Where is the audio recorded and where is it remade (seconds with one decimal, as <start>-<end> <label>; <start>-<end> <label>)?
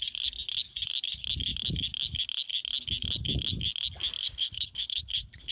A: 0.0-4.2 recorded; 4.2-5.5 remade